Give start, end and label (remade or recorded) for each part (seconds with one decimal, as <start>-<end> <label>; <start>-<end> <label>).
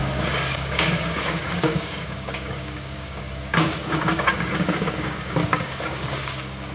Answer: 0.0-6.7 remade